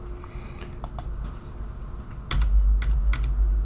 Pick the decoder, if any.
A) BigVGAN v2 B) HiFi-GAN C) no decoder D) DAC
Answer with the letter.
C